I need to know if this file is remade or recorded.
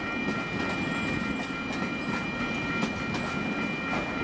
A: recorded